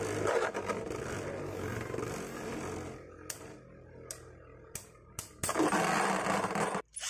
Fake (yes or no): no